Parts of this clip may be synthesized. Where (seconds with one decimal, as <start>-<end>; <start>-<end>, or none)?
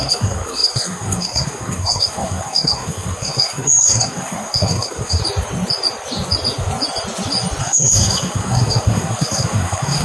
0.0-5.2; 7.6-10.0